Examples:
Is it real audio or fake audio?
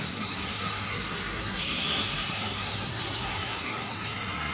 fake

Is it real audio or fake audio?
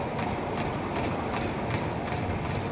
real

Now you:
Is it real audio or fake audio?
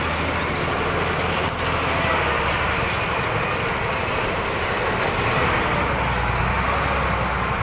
real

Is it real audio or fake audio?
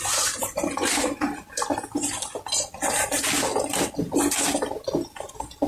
real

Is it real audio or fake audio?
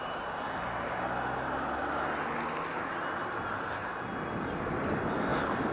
real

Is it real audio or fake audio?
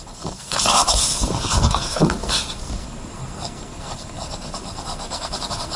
fake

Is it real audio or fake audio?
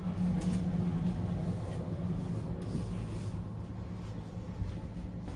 real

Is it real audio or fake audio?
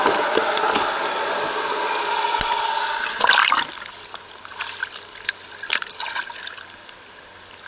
real